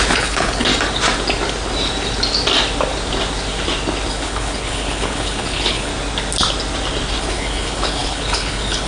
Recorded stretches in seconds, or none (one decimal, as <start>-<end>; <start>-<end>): 0.7-4.1; 5.9-7.2